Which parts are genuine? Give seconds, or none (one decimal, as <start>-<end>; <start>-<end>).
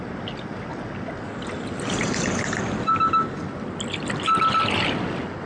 0.0-5.5